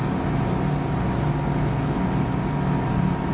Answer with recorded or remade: recorded